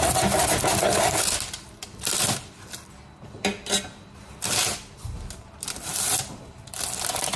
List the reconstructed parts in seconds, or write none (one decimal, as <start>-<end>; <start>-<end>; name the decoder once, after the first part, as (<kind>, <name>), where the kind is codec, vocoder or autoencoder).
none